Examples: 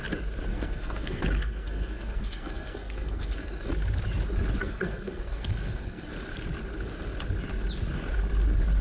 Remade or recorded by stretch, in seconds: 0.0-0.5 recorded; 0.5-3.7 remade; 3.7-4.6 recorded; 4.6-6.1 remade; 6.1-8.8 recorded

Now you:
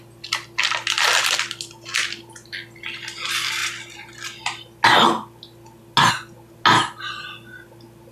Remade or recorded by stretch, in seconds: 0.0-8.1 recorded

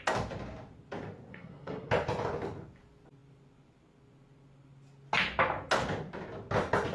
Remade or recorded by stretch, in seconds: 0.0-1.3 recorded; 1.3-1.9 remade; 1.9-6.9 recorded

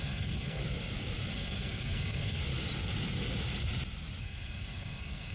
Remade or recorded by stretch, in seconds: 0.0-0.6 remade; 0.6-1.3 recorded; 1.3-2.4 remade; 2.4-4.2 recorded; 4.2-5.3 remade

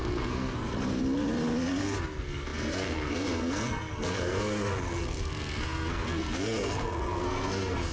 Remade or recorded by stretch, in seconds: 0.0-0.7 remade; 0.7-1.8 recorded; 1.8-7.9 remade

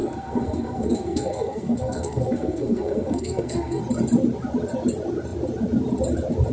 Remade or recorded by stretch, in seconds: 0.0-3.8 remade; 3.8-6.5 recorded